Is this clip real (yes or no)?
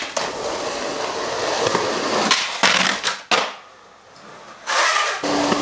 yes